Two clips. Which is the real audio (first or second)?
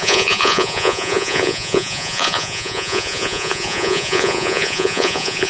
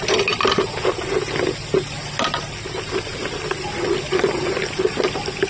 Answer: second